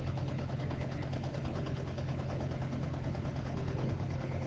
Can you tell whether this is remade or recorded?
remade